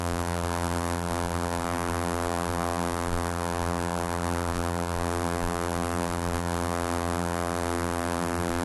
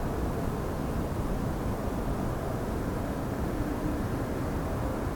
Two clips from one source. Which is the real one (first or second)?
second